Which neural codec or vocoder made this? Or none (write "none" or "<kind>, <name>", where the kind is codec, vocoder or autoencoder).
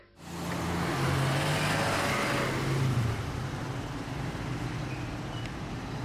none